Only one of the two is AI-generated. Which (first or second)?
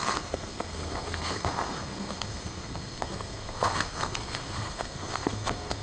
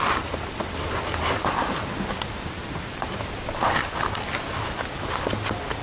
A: first